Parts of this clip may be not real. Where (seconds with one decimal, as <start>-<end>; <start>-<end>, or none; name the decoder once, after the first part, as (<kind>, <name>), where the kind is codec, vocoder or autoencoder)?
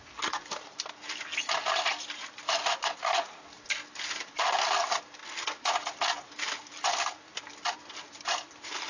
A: none